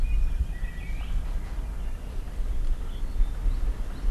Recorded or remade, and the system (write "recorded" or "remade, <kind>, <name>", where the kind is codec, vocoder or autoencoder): recorded